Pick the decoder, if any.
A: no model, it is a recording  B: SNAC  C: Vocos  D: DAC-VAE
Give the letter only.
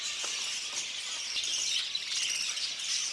A